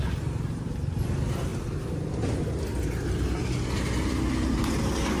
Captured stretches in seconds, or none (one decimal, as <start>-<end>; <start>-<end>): 0.0-5.2